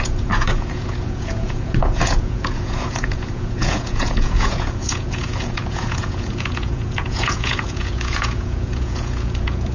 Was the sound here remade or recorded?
remade